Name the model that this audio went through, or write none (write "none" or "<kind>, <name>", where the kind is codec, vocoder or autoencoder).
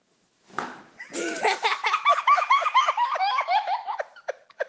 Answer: autoencoder, DAC-VAE